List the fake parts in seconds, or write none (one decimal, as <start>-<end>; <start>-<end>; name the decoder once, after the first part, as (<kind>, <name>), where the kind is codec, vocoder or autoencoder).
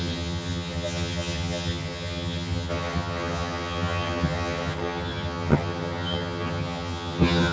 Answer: 0.0-7.5 (vocoder, HiFi-GAN)